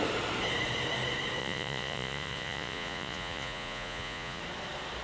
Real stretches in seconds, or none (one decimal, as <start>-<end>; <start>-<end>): 0.0-1.4; 4.4-5.0